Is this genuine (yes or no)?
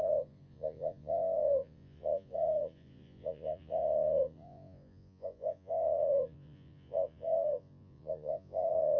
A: no